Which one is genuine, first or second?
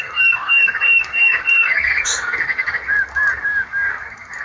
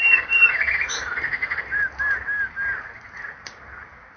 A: second